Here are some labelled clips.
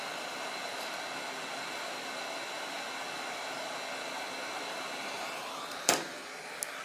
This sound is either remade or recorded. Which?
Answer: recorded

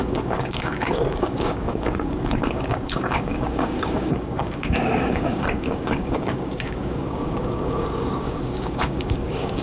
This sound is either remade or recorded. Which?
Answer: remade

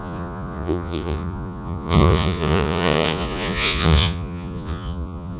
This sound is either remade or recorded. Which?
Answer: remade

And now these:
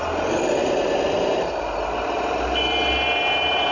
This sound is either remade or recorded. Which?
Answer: recorded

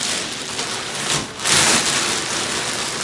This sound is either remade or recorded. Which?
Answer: recorded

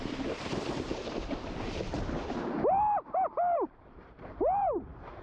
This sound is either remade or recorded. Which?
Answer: remade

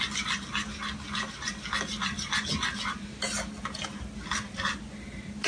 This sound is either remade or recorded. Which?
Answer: recorded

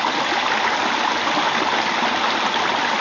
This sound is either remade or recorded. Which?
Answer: recorded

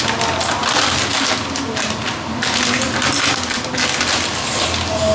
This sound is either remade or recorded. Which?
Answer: recorded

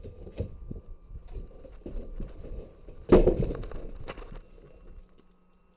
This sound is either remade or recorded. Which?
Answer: recorded